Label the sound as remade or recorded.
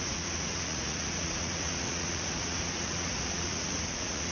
remade